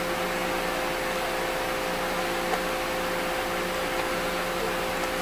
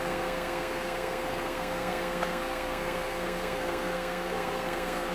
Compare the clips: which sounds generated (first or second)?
second